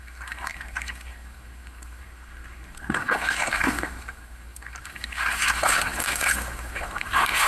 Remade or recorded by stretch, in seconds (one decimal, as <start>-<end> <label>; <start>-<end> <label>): 0.0-7.5 remade